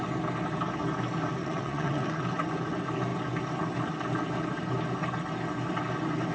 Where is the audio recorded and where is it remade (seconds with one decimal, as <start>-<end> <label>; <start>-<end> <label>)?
0.0-1.4 recorded; 1.4-2.2 remade; 2.2-6.3 recorded